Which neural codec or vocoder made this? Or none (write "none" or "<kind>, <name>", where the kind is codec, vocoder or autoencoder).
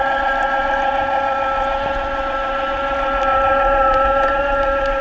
none